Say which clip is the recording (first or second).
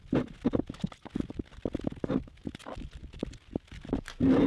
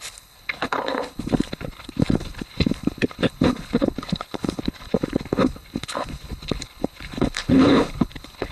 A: first